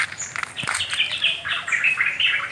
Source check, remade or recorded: remade